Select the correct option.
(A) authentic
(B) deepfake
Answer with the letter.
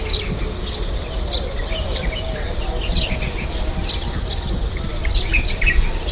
A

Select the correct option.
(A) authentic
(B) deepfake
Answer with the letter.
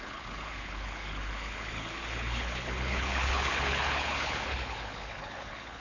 B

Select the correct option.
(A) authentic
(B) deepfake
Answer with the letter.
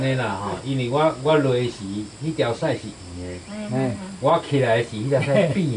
A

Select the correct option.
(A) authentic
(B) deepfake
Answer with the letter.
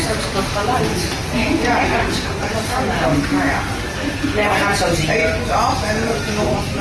A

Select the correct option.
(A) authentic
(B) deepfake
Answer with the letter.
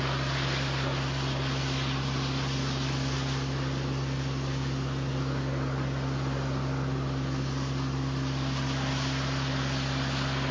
A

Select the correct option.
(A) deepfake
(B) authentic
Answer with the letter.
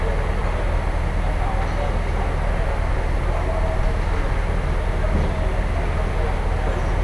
B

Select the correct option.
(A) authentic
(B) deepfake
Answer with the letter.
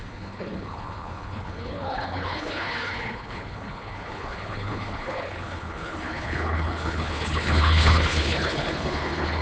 B